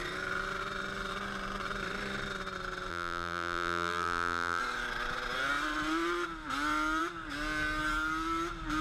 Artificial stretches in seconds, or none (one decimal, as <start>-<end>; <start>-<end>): 2.9-4.6

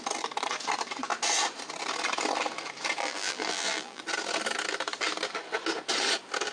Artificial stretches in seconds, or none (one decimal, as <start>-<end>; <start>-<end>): 3.0-4.0

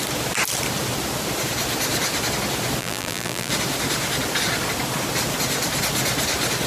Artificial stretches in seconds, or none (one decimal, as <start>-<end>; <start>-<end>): 2.8-3.5

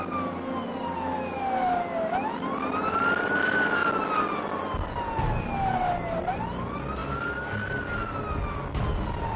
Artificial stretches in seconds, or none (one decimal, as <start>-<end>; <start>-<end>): none

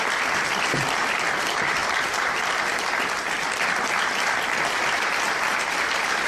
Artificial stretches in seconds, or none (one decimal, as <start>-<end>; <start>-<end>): 0.0-1.8; 5.6-6.3

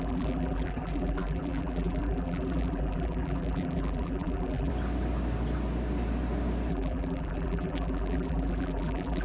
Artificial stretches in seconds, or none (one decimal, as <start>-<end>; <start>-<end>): 0.0-4.7; 6.7-9.2

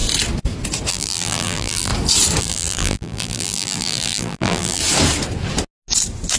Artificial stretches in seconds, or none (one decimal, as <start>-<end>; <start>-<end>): 0.9-1.9; 2.4-4.8

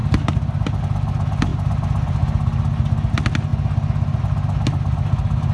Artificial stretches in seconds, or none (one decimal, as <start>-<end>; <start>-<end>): none